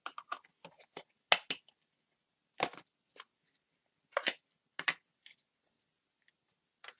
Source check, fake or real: real